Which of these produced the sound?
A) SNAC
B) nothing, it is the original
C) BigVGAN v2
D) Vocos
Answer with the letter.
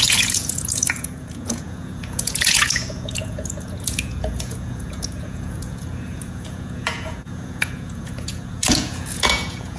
D